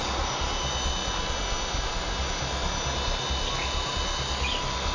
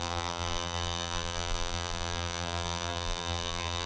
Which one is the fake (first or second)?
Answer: second